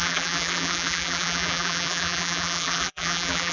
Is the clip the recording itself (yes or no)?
no